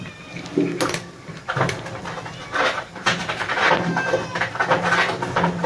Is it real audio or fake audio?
real